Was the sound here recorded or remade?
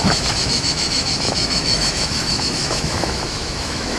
remade